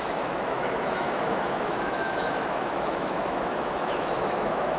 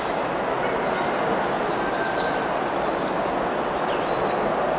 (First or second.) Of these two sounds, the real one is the second